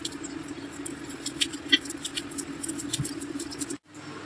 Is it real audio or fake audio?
real